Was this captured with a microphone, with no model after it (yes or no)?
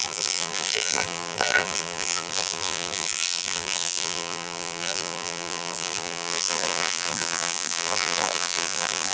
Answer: no